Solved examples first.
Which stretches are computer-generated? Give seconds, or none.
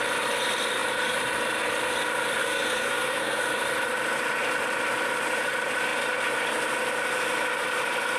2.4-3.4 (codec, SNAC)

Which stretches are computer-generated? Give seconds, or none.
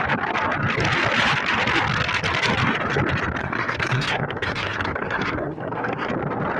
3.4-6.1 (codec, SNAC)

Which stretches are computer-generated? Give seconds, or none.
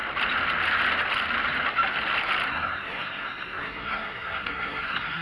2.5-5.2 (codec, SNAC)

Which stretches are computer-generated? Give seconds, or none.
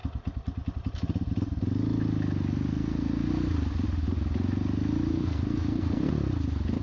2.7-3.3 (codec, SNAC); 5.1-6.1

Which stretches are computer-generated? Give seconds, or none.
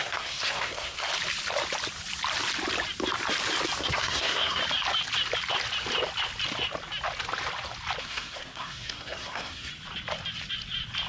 0.0-1.1 (codec, SNAC); 3.8-4.6; 8.0-9.7